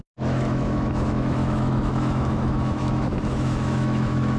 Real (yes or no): no